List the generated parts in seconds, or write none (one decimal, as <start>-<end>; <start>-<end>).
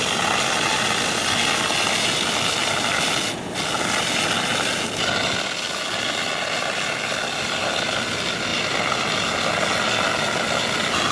8.5-9.0